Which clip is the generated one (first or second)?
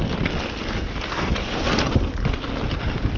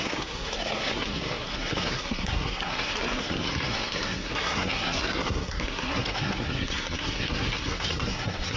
second